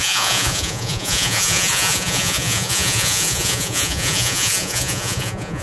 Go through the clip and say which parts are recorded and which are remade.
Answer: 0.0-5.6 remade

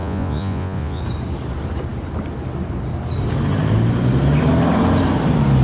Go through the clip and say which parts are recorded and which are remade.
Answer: 0.0-1.0 remade; 1.0-5.6 recorded

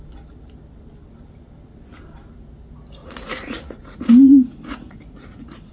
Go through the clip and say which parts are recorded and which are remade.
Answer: 0.0-3.0 recorded; 3.0-5.7 remade

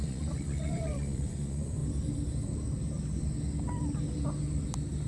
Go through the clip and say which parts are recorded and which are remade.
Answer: 0.0-1.8 remade; 1.8-5.1 recorded

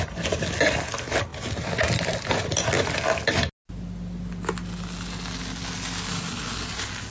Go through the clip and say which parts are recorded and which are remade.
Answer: 0.0-7.1 recorded